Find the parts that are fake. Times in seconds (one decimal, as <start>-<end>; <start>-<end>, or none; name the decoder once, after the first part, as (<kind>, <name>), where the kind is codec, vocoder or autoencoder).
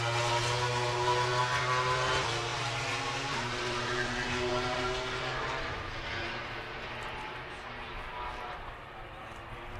2.5-7.7 (vocoder, BigVGAN v2); 8.1-8.7